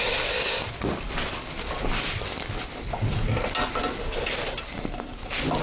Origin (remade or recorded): recorded